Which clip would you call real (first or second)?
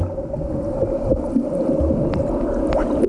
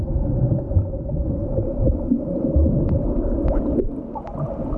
first